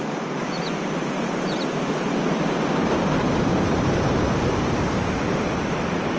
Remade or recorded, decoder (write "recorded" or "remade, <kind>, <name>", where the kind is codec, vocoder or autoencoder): remade, vocoder, BigVGAN v2